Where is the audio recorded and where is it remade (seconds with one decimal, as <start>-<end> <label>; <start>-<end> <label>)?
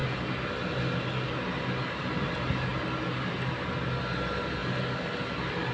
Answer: 0.0-5.7 recorded